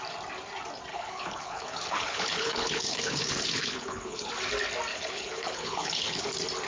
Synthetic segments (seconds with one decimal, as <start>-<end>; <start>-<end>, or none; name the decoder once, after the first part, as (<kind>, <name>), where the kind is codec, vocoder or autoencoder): 0.9-4.3 (codec, HILCodec); 4.9-6.3